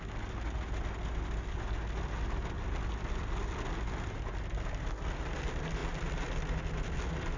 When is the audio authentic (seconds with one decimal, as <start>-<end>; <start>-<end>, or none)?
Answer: 0.0-7.4